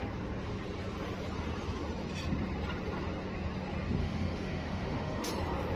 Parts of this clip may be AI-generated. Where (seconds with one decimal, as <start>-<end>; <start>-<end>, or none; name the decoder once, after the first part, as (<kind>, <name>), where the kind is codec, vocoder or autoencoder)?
4.0-5.3 (autoencoder, DAC-VAE)